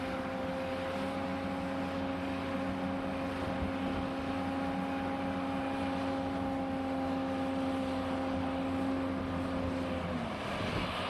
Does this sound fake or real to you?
real